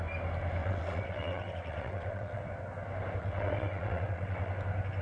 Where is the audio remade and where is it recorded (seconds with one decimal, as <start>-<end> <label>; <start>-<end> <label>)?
0.0-0.6 recorded; 0.6-2.4 remade; 2.4-3.2 recorded; 3.2-4.5 remade; 4.5-5.0 recorded